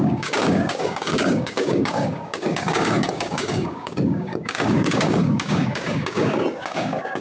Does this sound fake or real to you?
fake